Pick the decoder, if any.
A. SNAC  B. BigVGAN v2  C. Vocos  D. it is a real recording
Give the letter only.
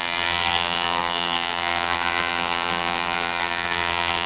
B